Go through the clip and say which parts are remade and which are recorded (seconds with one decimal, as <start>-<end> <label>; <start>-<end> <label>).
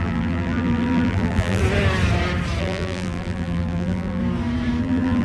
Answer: 0.0-1.6 remade; 1.6-2.6 recorded; 2.6-4.2 remade; 4.2-4.8 recorded; 4.8-5.2 remade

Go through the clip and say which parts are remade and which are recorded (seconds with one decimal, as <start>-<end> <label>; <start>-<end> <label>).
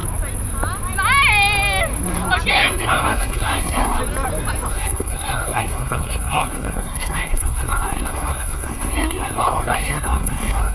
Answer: 0.0-2.5 recorded; 2.5-4.0 remade; 4.0-4.7 recorded; 4.7-10.7 remade